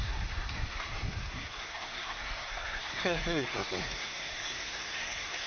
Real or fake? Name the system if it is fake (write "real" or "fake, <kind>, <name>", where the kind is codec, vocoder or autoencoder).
fake, codec, SNAC